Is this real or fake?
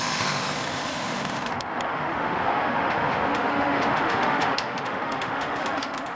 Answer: fake